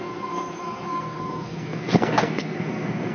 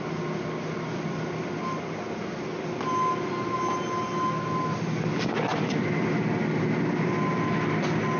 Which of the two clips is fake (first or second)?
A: first